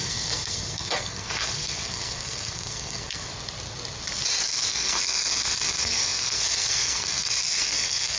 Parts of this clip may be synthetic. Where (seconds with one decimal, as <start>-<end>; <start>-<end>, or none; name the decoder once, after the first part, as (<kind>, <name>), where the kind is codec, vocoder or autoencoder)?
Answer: 0.0-3.3 (codec, SNAC); 4.4-8.2